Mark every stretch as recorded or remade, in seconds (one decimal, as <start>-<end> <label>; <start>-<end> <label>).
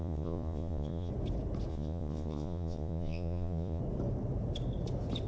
0.0-1.1 remade; 1.1-1.7 recorded; 1.7-3.8 remade; 3.8-5.3 recorded